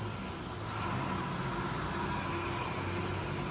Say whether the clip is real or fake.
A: real